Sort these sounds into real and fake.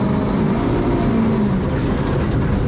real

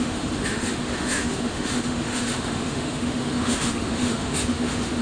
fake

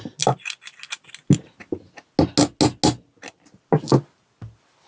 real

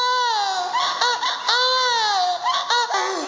real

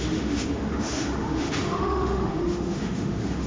fake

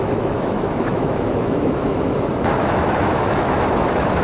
fake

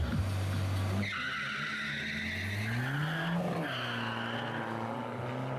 real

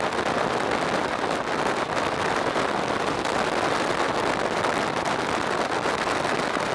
real